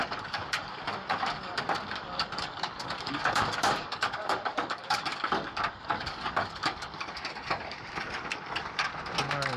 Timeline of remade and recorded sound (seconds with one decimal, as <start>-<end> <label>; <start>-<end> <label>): 0.0-8.9 remade; 8.9-9.6 recorded